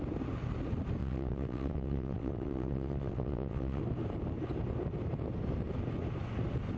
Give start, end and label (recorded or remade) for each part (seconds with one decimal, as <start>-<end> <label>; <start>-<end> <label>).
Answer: 0.0-1.0 recorded; 1.0-3.8 remade; 3.8-6.8 recorded